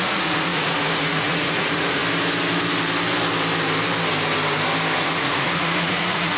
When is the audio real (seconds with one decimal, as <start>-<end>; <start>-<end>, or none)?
2.0-5.0